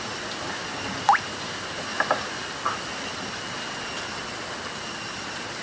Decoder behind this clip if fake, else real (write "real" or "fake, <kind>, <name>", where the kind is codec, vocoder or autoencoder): real